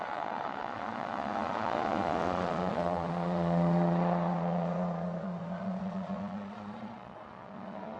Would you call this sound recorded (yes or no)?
no